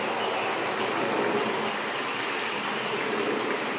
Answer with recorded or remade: recorded